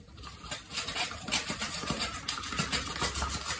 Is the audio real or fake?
real